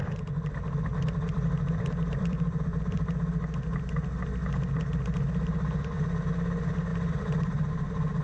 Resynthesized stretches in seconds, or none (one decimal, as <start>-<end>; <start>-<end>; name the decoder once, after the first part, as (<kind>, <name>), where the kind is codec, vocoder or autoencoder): 0.9-3.1 (vocoder, BigVGAN v2); 6.9-7.7